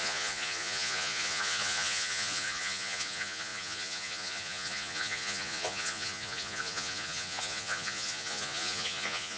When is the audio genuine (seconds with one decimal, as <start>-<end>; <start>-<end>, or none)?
none